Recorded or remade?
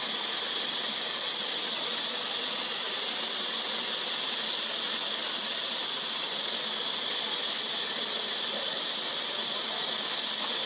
recorded